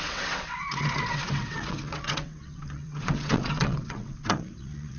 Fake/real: fake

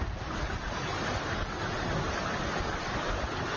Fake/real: real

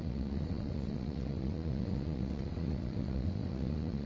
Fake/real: fake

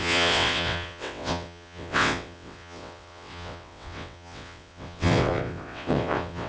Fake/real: fake